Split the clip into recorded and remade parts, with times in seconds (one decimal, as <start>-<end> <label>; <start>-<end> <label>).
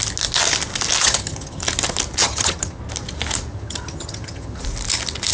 0.0-1.0 recorded; 1.0-1.6 remade; 1.6-2.2 recorded; 2.2-2.8 remade; 2.8-3.5 recorded; 3.5-4.6 remade; 4.6-5.3 recorded